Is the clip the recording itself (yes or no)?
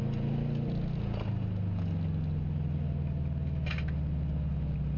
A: yes